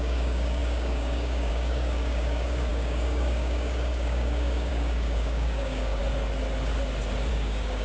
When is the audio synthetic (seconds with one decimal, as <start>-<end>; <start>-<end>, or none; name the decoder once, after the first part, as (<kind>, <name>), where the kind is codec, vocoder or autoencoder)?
0.0-6.0 (codec, DAC); 7.3-7.8